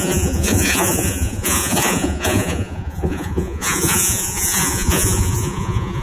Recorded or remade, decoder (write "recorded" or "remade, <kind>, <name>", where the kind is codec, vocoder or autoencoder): remade, vocoder, Vocos